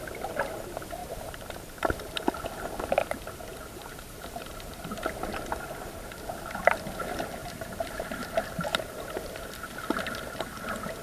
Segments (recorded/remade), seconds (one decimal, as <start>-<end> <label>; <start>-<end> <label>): 0.0-1.0 recorded; 1.0-1.5 remade; 1.5-3.5 recorded; 3.5-4.8 remade; 4.8-7.4 recorded; 7.4-9.5 remade; 9.5-11.0 recorded